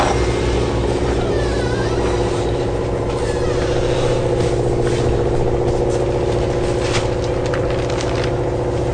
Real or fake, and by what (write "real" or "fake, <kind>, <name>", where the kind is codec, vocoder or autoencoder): real